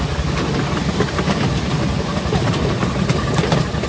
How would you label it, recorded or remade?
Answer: recorded